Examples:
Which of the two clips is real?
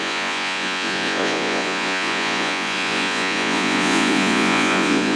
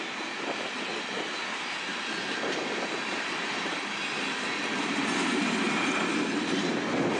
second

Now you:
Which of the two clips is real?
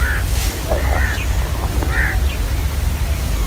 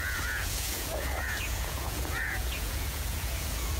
first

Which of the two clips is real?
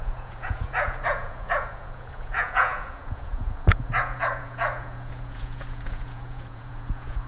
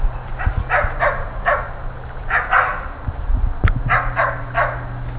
second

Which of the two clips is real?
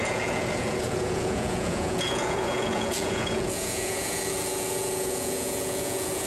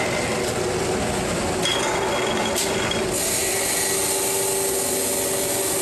second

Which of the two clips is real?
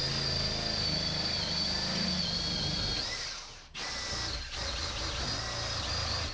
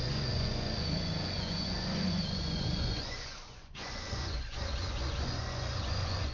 first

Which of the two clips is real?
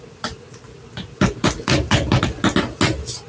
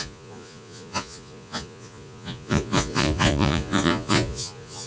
first